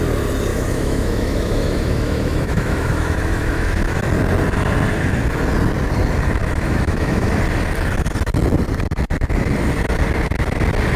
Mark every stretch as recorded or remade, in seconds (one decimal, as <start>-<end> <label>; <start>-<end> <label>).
0.0-0.5 recorded; 0.5-4.0 remade; 4.0-6.4 recorded; 6.4-7.3 remade; 7.3-11.0 recorded